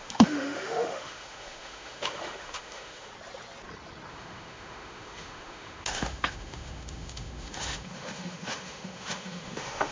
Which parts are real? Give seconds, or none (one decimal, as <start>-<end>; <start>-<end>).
3.1-4.1